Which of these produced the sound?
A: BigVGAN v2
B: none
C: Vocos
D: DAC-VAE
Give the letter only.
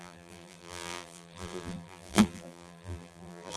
A